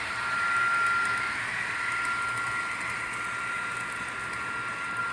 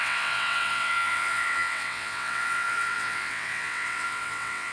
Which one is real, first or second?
first